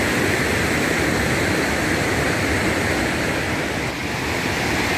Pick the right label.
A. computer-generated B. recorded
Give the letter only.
B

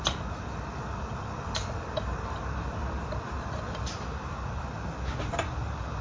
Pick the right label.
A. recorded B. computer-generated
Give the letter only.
B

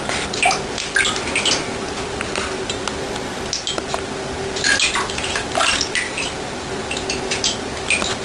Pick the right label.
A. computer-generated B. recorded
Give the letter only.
B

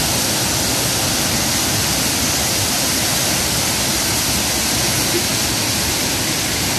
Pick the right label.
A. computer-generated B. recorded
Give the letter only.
B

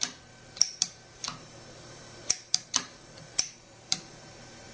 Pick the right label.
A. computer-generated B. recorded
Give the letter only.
A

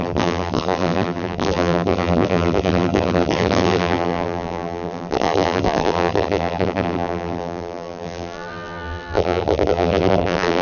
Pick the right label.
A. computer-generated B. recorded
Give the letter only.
A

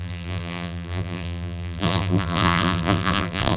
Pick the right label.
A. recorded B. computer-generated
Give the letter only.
B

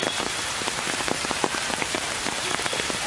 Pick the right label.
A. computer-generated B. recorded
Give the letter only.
A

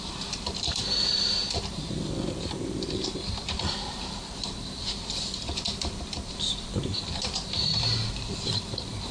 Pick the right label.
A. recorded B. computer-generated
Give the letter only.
B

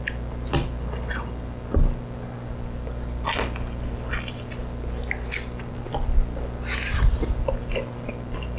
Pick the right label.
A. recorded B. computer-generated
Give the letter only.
A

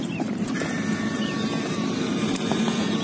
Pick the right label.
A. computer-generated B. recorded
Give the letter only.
A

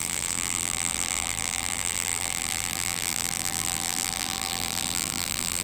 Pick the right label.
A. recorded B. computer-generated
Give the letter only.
B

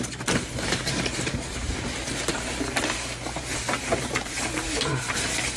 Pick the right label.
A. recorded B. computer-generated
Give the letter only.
B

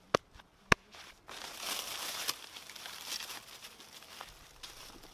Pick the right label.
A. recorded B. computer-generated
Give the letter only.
A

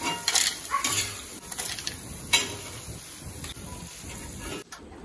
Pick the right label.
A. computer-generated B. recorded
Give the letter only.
A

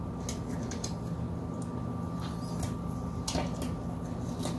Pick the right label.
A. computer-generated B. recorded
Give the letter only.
B